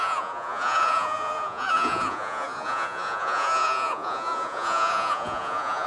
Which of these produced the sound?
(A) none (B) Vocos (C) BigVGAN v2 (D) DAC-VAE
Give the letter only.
B